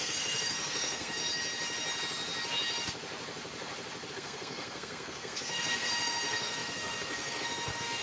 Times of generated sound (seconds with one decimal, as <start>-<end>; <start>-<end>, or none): 0.0-1.2; 4.1-8.0